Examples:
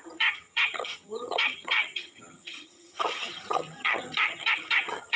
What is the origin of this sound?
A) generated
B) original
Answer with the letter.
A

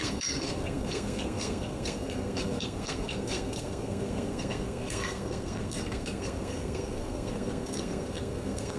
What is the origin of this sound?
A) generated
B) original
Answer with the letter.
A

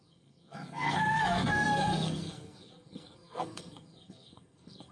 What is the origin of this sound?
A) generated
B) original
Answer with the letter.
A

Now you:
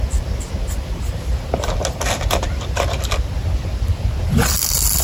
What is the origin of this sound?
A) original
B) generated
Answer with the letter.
A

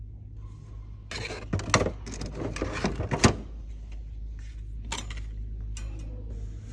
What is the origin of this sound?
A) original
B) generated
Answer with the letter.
A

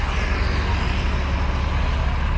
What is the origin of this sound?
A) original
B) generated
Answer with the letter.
A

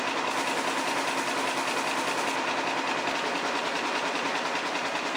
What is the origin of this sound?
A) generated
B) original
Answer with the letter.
B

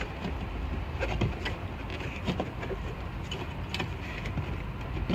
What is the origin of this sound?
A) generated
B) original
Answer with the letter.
B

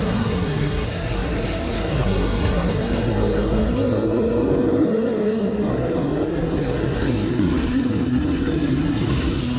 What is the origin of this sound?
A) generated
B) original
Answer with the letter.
A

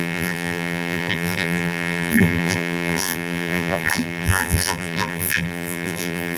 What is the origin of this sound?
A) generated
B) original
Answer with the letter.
A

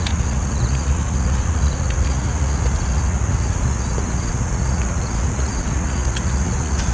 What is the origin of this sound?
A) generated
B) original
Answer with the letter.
A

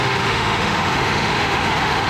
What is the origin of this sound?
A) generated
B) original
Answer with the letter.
A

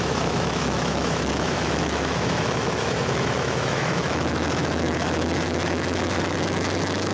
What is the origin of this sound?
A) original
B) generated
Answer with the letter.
B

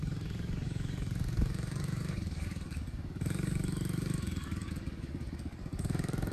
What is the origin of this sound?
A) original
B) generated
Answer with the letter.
B